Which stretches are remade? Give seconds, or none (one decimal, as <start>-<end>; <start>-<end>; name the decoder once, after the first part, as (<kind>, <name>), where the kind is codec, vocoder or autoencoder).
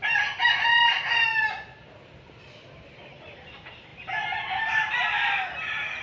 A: none